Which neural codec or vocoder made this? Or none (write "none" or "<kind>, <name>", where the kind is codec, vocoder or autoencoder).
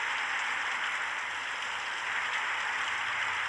none